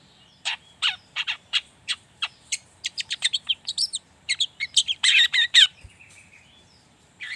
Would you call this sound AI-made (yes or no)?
yes